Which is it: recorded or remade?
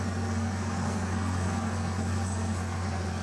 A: remade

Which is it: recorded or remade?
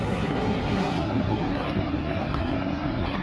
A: remade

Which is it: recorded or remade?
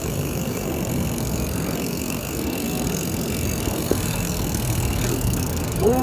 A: remade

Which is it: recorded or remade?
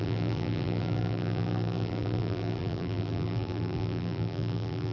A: remade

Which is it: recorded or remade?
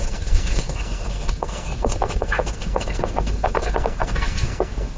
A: remade